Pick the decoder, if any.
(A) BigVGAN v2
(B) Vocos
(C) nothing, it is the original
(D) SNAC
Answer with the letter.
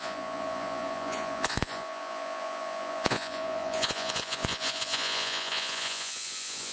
B